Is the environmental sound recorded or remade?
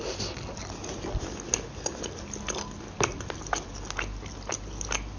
recorded